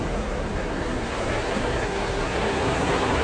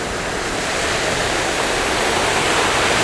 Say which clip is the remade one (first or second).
first